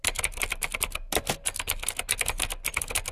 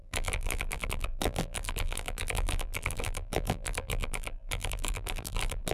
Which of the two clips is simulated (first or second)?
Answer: second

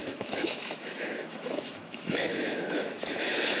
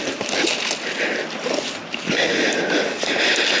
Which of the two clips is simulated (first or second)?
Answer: first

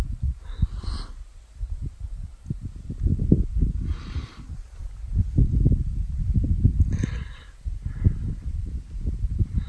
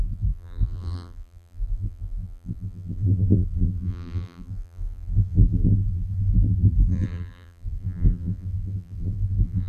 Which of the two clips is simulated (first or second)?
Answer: second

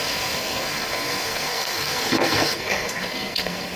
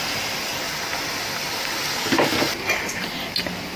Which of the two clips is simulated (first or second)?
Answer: first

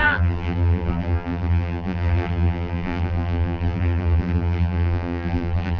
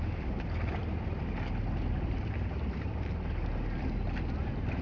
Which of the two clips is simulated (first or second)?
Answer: first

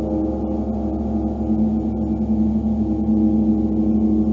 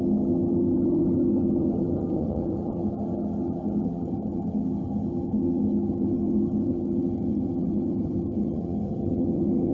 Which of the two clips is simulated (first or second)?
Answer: second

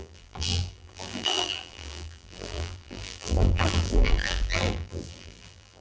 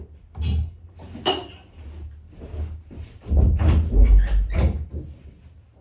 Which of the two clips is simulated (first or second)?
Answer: first